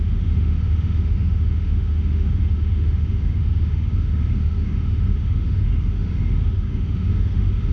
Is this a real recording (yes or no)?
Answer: no